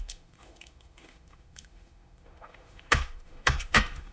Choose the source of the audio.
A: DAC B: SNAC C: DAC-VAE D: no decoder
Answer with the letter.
C